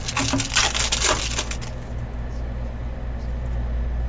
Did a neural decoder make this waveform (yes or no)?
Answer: no